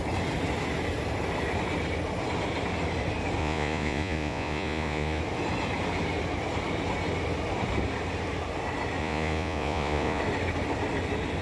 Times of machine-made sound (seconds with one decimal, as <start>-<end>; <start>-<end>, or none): 3.4-5.2; 9.0-10.2